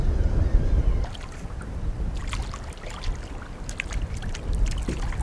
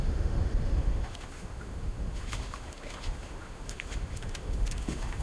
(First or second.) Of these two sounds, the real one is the first